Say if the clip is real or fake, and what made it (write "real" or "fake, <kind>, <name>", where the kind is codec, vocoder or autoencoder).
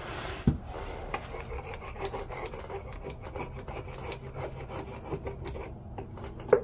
real